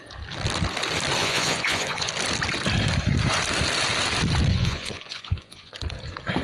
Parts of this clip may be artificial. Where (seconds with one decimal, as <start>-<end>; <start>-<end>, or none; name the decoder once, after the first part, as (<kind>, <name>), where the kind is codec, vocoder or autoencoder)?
1.2-2.1 (vocoder, Vocos); 4.5-5.7